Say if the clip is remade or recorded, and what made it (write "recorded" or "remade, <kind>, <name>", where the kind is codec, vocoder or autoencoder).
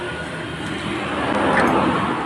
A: recorded